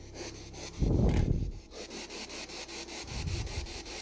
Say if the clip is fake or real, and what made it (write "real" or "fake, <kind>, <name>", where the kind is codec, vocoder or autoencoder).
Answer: real